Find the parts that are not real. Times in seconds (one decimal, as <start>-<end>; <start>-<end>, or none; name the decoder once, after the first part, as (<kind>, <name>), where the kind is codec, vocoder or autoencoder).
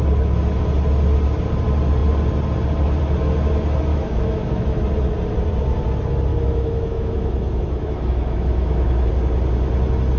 3.9-4.8 (autoencoder, DAC-VAE); 6.3-9.1